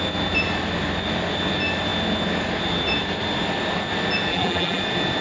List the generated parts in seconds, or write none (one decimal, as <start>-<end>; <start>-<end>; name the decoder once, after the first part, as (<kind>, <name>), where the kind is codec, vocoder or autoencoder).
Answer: 4.3-4.8 (vocoder, BigVGAN v2)